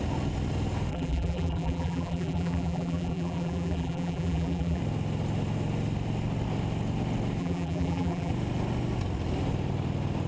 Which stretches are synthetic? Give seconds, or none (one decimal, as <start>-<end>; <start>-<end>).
0.9-4.8; 7.4-8.3